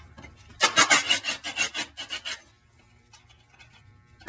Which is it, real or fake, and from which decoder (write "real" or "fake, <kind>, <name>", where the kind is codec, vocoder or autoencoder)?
real